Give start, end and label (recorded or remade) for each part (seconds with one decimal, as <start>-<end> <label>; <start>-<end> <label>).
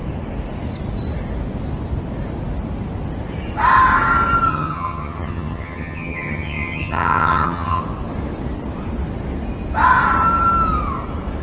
0.0-4.5 recorded; 4.5-7.8 remade; 7.8-11.4 recorded